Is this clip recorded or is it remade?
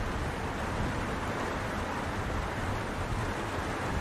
remade